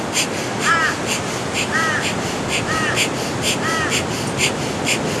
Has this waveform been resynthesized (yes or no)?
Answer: no